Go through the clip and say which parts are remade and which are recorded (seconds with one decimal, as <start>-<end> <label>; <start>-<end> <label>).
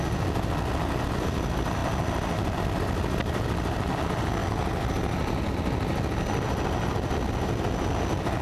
0.0-8.4 recorded